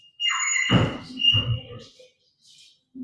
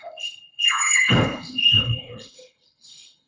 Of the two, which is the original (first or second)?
first